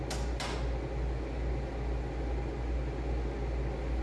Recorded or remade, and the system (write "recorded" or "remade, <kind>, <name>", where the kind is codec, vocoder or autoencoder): recorded